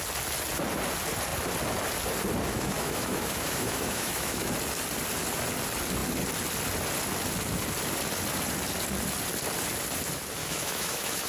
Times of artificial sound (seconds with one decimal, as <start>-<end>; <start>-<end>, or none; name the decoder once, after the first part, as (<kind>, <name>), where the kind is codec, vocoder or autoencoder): 2.5-4.5 (autoencoder, DAC-VAE); 10.4-11.3